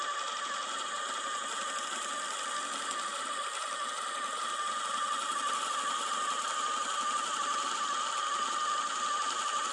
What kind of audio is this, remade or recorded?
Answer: recorded